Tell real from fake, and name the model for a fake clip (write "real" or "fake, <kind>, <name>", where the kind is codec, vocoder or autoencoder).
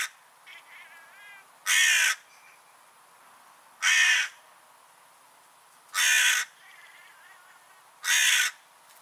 real